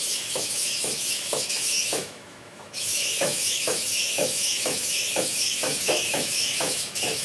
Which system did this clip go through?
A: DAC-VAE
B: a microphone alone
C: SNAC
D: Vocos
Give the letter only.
A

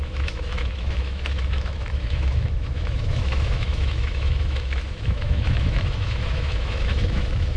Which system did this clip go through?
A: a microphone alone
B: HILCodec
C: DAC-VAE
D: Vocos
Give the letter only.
C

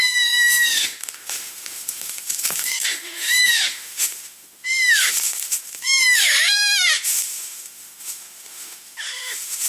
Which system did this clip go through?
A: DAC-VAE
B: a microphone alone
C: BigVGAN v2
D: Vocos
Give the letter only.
A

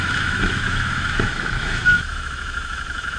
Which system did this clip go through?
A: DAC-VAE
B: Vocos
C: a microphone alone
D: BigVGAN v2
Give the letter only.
A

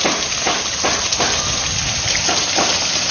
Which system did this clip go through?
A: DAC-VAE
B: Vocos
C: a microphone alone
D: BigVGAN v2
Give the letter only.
C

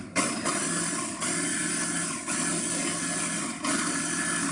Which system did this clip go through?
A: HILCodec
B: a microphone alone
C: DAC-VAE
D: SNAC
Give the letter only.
B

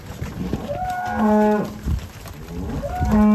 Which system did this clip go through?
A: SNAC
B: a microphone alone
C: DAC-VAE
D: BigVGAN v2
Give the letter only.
B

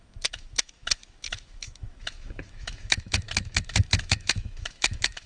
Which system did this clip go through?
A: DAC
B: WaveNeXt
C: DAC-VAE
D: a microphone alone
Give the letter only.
C